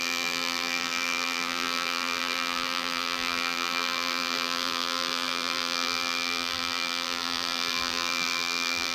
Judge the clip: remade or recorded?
remade